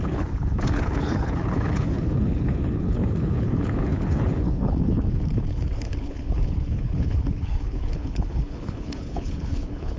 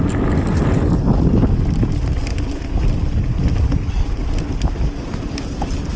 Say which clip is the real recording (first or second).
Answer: second